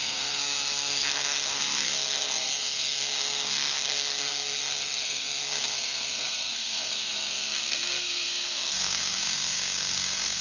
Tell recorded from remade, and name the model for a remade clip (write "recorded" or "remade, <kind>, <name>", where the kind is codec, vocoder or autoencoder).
remade, codec, SNAC